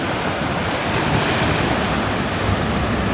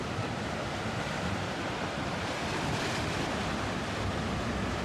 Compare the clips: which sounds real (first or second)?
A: first